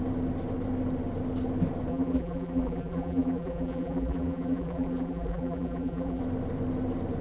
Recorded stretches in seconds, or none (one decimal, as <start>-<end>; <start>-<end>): 0.0-1.9; 6.2-7.2